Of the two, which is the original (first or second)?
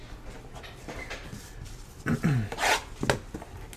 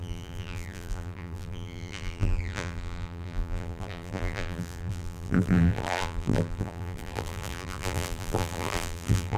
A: first